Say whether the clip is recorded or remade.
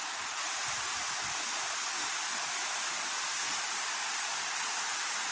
remade